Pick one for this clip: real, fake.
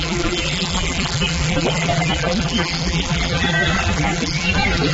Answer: fake